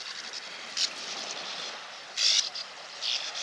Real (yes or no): yes